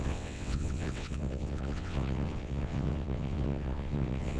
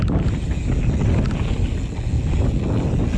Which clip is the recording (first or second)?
second